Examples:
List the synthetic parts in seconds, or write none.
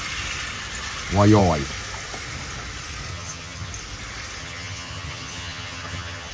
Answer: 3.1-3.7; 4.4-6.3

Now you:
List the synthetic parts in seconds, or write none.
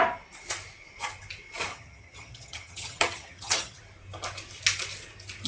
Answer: 1.7-3.8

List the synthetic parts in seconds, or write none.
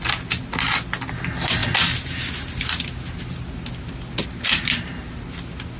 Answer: none